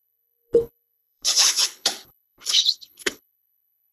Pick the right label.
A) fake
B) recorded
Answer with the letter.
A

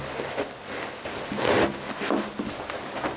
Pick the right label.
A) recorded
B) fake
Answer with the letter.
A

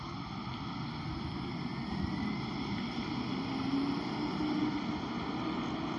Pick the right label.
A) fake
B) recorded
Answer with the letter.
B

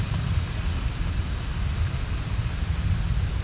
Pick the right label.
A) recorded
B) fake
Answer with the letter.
A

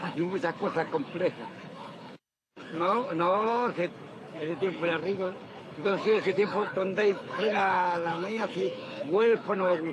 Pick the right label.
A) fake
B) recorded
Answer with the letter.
A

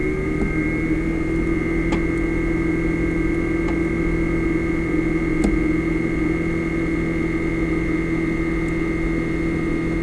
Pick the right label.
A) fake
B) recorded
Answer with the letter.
B